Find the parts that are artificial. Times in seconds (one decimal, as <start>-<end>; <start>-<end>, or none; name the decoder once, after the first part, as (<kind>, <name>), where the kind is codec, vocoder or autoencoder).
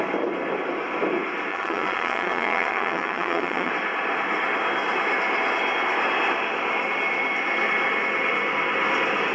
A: 1.5-3.7 (vocoder, Vocos)